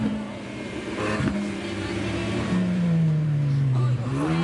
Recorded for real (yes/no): no